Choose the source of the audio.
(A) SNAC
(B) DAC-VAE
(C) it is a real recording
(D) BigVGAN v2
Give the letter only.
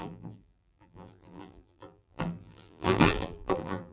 D